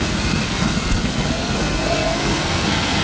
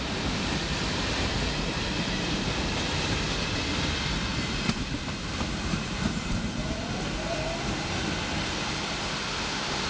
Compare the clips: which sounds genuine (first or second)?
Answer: second